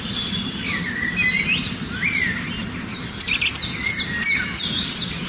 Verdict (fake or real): real